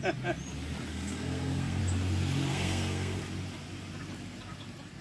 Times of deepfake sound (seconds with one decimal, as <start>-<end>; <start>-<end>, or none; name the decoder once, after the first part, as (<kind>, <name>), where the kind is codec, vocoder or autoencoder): 0.9-1.8 (codec, SNAC); 2.5-3.2